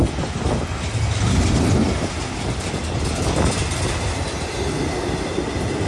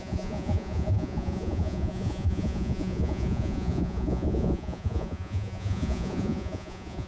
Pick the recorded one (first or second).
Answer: first